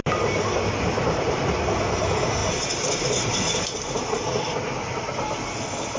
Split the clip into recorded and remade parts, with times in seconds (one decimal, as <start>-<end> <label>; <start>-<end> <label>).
0.0-6.0 recorded